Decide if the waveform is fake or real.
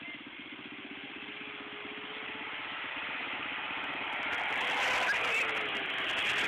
real